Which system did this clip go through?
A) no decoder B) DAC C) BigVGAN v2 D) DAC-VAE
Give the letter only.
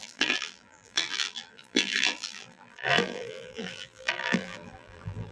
C